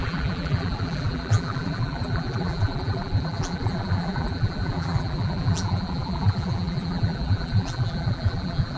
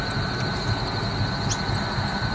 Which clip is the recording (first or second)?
second